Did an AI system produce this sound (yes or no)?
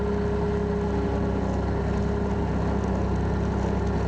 no